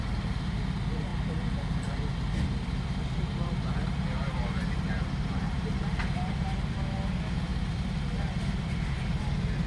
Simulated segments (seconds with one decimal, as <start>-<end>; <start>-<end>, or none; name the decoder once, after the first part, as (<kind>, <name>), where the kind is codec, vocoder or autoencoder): none